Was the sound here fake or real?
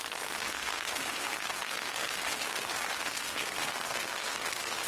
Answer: fake